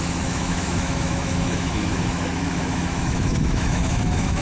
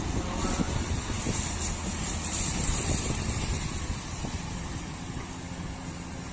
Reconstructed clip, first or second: first